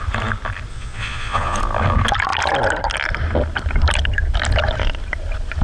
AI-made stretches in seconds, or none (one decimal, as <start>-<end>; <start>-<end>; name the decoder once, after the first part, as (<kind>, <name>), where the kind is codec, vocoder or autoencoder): 0.7-1.6 (vocoder, Vocos)